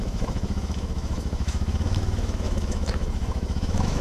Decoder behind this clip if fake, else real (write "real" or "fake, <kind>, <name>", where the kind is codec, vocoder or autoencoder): fake, autoencoder, DAC-VAE